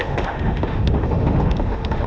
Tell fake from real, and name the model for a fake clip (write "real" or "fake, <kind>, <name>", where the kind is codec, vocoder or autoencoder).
fake, autoencoder, DAC-VAE